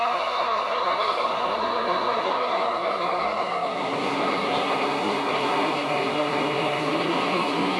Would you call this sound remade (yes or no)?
yes